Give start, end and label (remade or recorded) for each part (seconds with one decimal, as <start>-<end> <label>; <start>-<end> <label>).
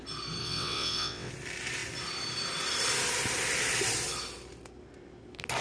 0.0-0.4 recorded; 0.4-1.3 remade; 1.3-5.6 recorded